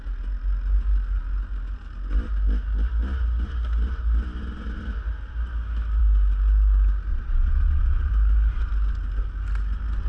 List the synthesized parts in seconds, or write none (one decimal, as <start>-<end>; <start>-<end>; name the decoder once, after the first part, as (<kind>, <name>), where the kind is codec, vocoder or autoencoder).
7.1-8.1 (vocoder, Vocos)